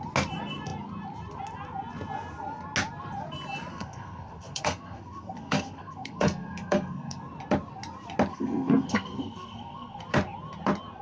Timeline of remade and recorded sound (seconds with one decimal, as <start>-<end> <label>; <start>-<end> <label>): 0.0-3.7 recorded; 3.7-7.2 remade; 7.2-8.3 recorded; 8.3-10.0 remade; 10.0-11.0 recorded